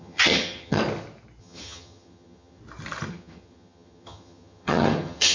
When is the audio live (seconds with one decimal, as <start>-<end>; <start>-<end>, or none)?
0.8-1.4; 2.6-3.1